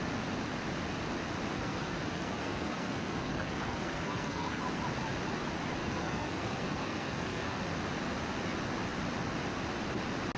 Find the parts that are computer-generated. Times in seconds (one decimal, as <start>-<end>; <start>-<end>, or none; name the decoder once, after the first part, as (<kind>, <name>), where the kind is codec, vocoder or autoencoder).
1.5-4.8 (codec, SNAC); 5.8-7.6